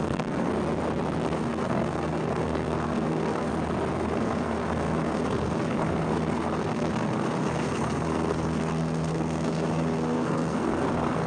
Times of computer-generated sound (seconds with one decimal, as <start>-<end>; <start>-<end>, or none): 0.0-0.5; 1.2-3.5; 4.0-11.3